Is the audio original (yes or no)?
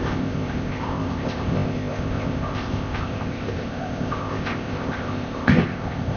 no